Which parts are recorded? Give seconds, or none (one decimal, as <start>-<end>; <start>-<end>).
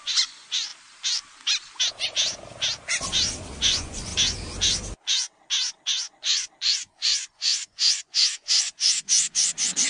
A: 0.7-3.6; 4.1-5.8